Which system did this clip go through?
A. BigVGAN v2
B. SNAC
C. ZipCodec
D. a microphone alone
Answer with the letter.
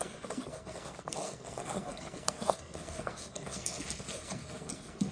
B